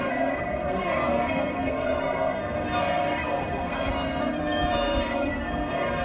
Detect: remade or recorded remade